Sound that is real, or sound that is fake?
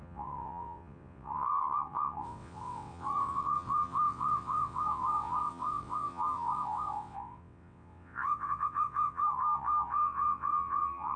fake